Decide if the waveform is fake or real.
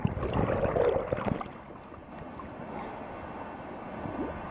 real